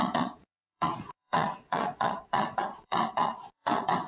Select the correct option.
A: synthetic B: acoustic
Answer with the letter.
A